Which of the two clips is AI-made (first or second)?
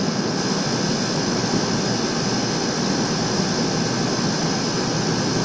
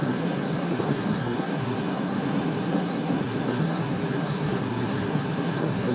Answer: second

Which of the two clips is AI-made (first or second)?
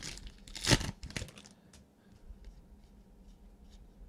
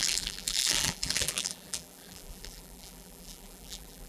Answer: second